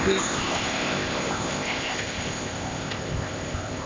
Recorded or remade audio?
remade